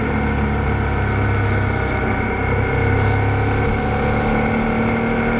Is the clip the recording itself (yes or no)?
yes